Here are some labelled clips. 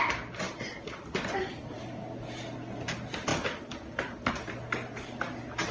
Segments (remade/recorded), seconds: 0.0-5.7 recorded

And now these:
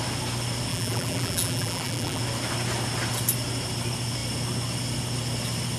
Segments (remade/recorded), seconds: 0.0-0.7 recorded; 0.7-2.2 remade; 2.2-5.8 recorded

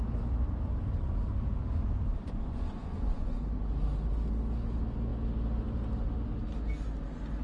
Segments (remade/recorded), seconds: 0.0-2.1 recorded; 2.1-3.9 remade; 3.9-7.4 recorded

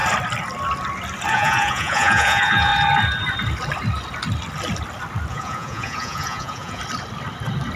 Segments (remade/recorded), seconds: 0.0-1.3 recorded; 1.3-2.7 remade; 2.7-5.3 recorded; 5.3-6.8 remade; 6.8-7.8 recorded

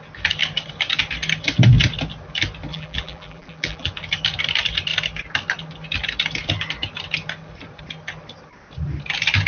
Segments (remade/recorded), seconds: 0.0-2.7 recorded; 2.7-3.9 remade; 3.9-9.5 recorded

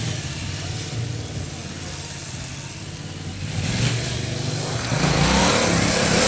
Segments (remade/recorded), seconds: 0.0-6.3 recorded

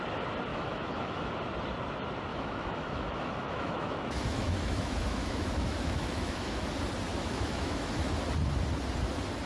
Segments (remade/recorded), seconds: 0.0-0.5 recorded; 0.5-1.3 remade; 1.3-2.3 recorded; 2.3-6.6 remade; 6.6-7.1 recorded; 7.1-8.1 remade; 8.1-9.5 recorded

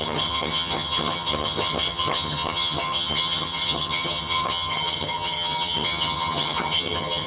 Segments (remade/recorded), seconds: 0.0-7.3 remade